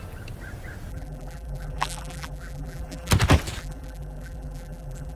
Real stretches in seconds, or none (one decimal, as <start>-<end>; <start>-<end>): 0.0-0.9; 3.1-3.6